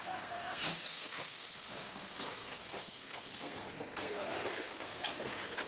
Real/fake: fake